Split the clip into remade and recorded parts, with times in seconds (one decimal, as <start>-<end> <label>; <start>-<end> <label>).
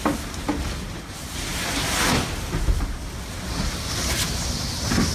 0.0-5.1 recorded